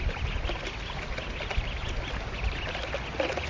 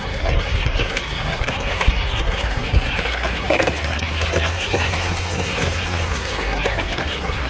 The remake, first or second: second